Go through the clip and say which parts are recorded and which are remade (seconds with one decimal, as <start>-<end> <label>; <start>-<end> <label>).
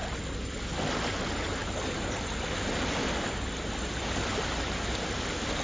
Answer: 0.0-5.6 recorded